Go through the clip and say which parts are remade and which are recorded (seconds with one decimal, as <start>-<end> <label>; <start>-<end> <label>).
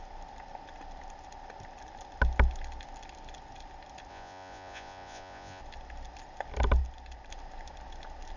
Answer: 0.0-4.1 recorded; 4.1-5.6 remade; 5.6-8.4 recorded